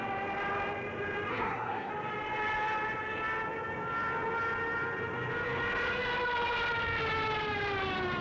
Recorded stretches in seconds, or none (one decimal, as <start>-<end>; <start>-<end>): 0.0-1.3; 1.9-8.2